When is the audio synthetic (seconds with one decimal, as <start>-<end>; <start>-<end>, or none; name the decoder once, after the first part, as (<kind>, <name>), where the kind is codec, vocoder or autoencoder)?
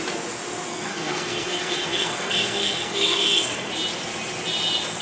0.7-3.7 (codec, SNAC)